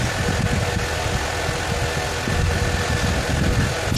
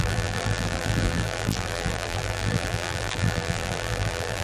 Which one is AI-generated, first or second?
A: second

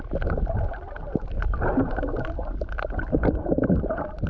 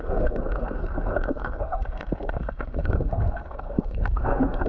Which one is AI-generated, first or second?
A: second